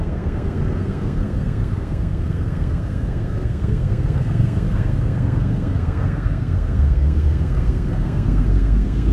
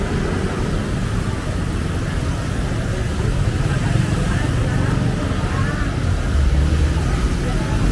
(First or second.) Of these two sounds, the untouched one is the second